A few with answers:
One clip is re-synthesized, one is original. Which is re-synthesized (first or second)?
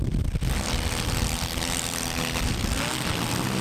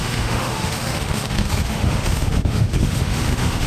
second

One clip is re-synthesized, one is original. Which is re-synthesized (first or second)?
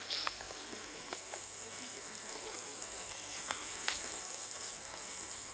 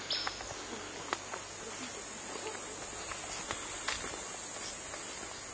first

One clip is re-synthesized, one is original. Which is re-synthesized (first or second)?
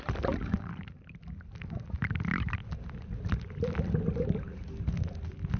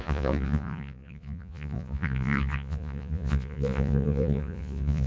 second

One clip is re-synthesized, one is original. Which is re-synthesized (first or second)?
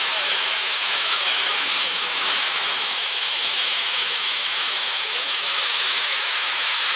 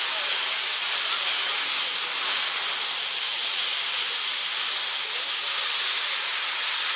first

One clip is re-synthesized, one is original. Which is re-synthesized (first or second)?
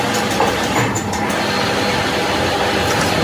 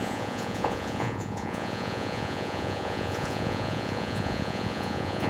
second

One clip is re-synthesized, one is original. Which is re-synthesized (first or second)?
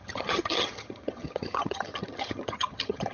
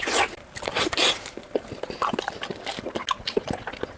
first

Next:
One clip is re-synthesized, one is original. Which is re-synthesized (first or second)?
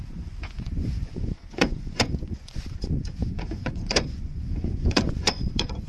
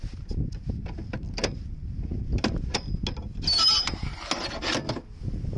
first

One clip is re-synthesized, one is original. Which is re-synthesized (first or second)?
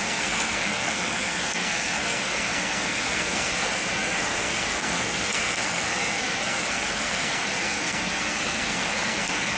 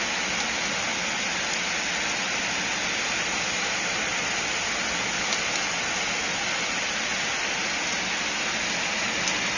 first